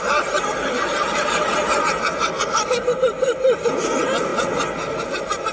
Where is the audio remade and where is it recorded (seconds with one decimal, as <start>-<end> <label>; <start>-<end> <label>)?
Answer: 0.0-5.5 recorded